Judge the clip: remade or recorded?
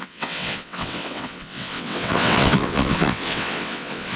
remade